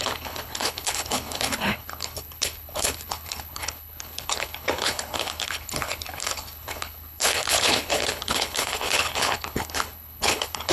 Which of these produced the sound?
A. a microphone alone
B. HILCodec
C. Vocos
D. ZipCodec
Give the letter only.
B